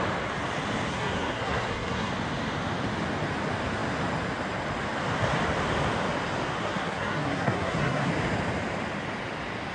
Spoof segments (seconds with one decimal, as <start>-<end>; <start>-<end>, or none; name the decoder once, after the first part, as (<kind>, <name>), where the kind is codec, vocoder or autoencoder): 0.9-2.1 (codec, SNAC); 6.6-8.1